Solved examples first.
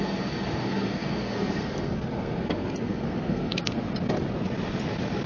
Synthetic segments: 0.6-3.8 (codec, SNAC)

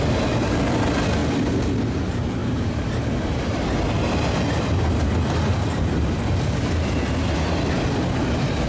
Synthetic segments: 2.4-3.4 (vocoder, BigVGAN v2); 5.5-6.7

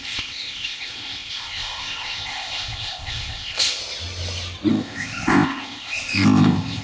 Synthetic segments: 0.0-3.8 (codec, ZipCodec); 4.7-6.8